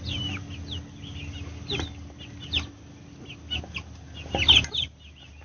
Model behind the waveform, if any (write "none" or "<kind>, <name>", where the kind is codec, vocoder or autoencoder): none